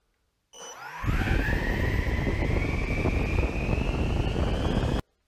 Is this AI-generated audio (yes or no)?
no